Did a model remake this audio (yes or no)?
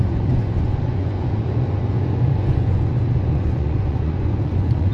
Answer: yes